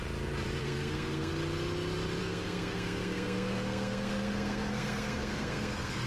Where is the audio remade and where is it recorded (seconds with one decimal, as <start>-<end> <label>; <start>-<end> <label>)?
0.0-0.6 recorded; 0.6-1.3 remade; 1.3-2.2 recorded; 2.2-6.1 remade

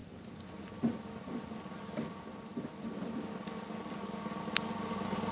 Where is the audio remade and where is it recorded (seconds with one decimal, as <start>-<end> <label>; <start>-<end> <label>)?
0.0-5.3 recorded

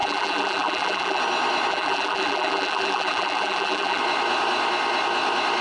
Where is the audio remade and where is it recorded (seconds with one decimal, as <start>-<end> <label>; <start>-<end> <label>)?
0.0-1.2 remade; 1.2-1.7 recorded; 1.7-4.0 remade; 4.0-5.6 recorded

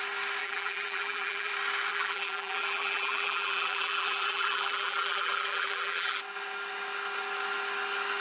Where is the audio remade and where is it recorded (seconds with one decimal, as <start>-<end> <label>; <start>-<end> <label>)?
0.0-0.4 recorded; 0.4-1.5 remade; 1.5-1.9 recorded; 1.9-6.2 remade; 6.2-8.2 recorded

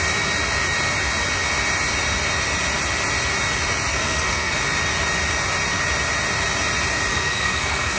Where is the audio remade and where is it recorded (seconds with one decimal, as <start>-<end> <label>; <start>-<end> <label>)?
0.0-3.9 recorded; 3.9-4.6 remade; 4.6-7.1 recorded; 7.1-8.0 remade

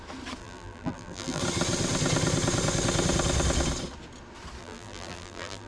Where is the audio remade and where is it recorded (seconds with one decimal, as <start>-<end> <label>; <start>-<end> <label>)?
0.0-0.4 recorded; 0.4-1.4 remade; 1.4-4.6 recorded; 4.6-5.7 remade